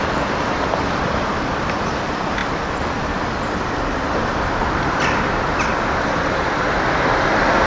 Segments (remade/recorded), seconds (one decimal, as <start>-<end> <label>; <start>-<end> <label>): 0.0-7.7 remade

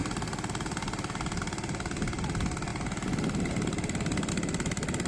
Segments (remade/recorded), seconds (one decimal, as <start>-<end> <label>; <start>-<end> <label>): 0.0-5.1 recorded